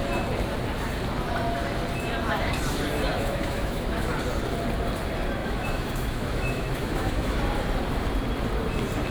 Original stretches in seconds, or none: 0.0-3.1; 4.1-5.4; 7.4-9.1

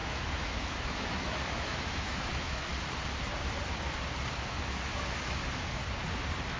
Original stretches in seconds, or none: 2.7-4.5; 5.8-6.6

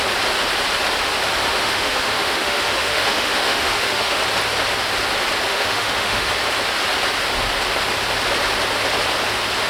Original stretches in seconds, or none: 0.0-1.5; 4.2-5.5; 6.3-9.7

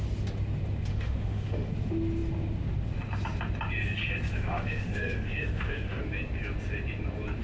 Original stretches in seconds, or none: 0.0-0.9; 1.7-4.3; 6.0-7.4